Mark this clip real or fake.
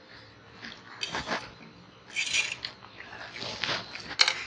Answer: real